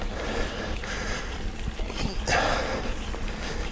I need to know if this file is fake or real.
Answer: real